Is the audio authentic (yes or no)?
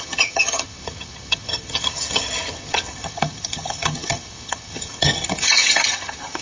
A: no